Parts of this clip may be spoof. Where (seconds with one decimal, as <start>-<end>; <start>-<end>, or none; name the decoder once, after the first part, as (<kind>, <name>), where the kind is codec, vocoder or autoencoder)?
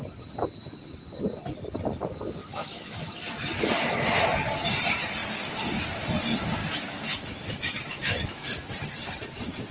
2.4-3.1 (autoencoder, DAC-VAE); 6.6-8.7